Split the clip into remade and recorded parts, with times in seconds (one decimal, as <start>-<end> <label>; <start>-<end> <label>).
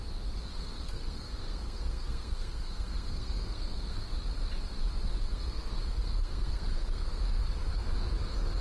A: 0.0-0.5 recorded; 0.5-4.1 remade; 4.1-5.2 recorded; 5.2-7.2 remade; 7.2-8.6 recorded